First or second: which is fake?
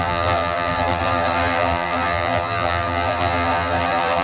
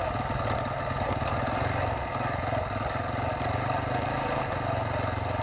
first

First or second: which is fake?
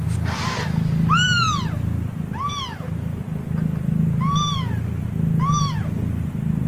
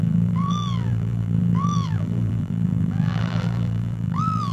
second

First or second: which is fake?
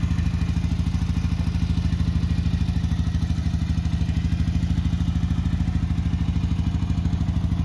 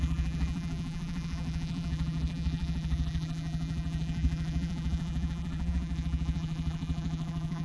second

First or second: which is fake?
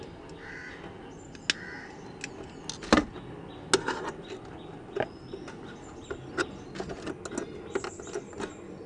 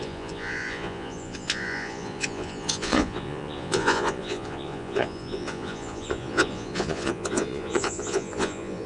second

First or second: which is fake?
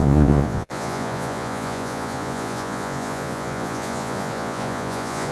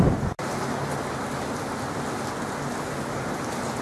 first